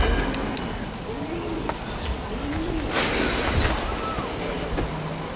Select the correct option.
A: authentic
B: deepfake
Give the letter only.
A